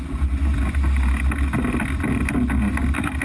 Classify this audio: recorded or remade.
recorded